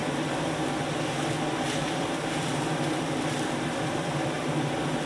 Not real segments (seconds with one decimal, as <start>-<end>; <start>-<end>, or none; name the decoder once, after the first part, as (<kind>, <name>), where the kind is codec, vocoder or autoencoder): 0.0-0.8 (vocoder, BigVGAN v2); 1.8-5.1